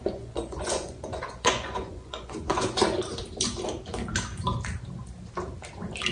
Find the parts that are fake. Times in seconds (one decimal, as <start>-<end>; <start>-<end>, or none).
0.0-2.8